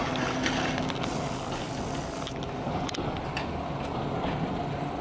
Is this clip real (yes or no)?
yes